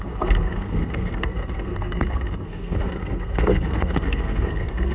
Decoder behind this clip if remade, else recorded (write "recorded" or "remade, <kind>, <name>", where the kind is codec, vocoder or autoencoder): remade, codec, SNAC